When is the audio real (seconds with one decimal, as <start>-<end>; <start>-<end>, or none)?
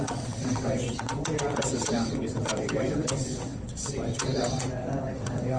none